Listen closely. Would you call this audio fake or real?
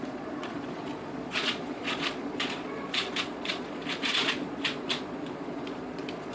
fake